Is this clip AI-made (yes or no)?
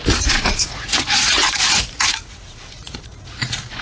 yes